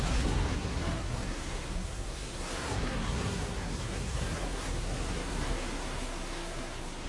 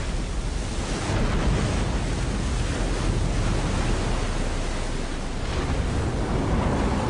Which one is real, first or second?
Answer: second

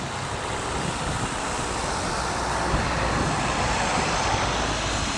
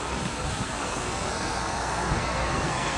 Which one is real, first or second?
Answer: first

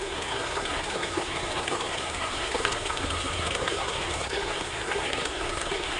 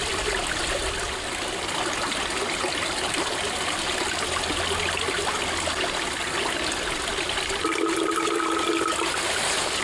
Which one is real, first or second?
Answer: second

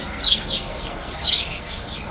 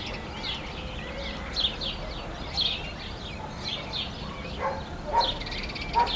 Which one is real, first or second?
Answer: second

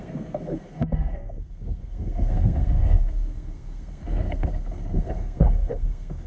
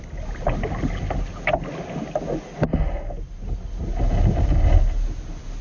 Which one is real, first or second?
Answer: second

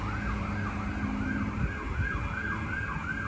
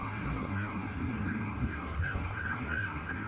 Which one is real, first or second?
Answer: first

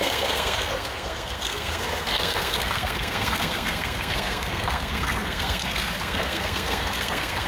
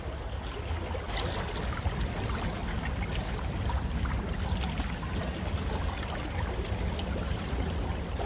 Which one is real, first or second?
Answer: second